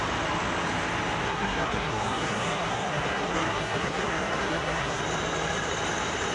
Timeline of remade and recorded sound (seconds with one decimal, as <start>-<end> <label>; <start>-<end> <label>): 0.0-1.2 recorded; 1.2-5.0 remade; 5.0-6.3 recorded